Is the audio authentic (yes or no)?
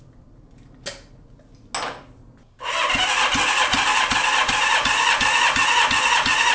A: yes